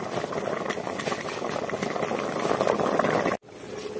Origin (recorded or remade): recorded